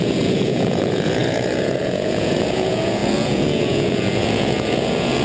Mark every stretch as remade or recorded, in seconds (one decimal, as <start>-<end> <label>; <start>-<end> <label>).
0.0-5.2 remade